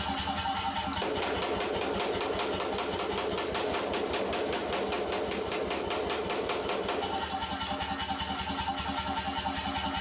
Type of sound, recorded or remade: recorded